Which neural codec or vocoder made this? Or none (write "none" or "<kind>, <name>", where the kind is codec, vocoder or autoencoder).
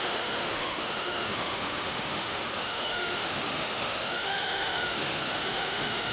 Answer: autoencoder, DAC-VAE